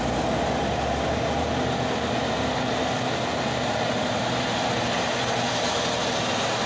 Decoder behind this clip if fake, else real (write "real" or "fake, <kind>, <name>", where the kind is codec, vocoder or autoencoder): real